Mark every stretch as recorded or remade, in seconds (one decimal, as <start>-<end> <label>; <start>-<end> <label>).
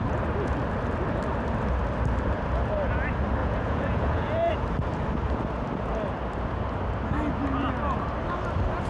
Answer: 0.0-3.4 recorded; 3.4-4.5 remade; 4.5-8.9 recorded